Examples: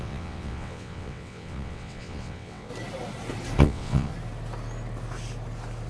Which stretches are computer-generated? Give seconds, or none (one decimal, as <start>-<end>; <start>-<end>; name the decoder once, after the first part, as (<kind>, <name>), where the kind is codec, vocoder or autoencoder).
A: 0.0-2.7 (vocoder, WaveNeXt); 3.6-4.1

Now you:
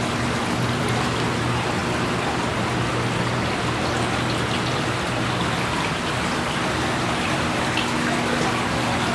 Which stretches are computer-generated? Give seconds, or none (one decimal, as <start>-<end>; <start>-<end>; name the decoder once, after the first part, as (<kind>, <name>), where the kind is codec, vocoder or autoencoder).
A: none

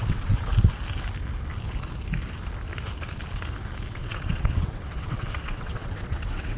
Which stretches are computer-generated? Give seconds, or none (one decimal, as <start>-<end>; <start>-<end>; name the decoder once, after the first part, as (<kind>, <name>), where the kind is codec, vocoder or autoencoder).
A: 0.0-0.5 (vocoder, WaveNeXt); 3.9-6.6

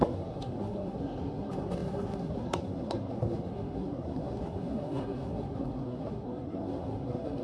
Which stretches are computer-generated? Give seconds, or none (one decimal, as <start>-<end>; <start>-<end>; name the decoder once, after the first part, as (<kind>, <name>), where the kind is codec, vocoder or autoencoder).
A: 0.0-7.4 (codec, SNAC)

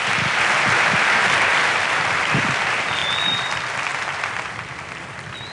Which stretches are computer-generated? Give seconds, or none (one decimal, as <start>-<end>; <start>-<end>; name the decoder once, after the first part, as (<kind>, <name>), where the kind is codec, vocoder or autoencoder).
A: 1.5-2.2 (vocoder, BigVGAN v2); 3.0-3.5; 3.9-4.9

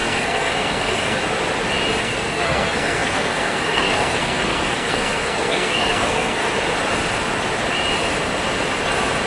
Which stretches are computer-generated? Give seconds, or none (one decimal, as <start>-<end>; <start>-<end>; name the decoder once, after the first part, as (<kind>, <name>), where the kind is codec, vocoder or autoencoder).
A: 0.0-1.2 (codec, SNAC); 2.0-6.4

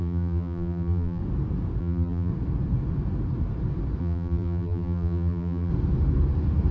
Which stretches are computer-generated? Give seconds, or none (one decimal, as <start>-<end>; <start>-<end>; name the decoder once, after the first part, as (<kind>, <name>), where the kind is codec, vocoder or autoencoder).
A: 0.0-1.2 (vocoder, BigVGAN v2); 1.8-2.3; 4.0-5.7